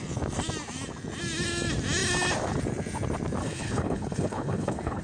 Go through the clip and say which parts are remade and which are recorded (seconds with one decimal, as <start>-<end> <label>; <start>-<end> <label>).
0.0-3.4 recorded; 3.4-5.0 remade